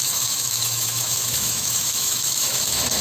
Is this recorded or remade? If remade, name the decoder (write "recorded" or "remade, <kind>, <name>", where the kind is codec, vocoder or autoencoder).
remade, autoencoder, DAC-VAE